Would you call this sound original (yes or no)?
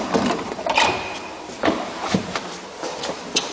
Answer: no